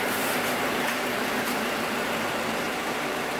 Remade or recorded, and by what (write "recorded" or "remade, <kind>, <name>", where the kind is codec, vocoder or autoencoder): remade, vocoder, BigVGAN v2